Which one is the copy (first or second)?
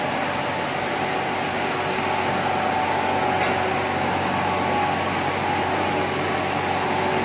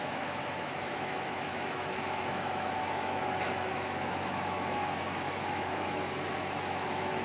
second